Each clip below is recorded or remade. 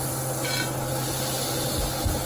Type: recorded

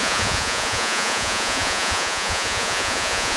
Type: remade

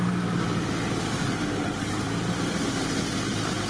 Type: recorded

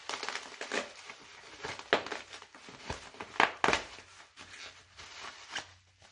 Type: recorded